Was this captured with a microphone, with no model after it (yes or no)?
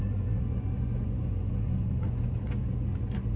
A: no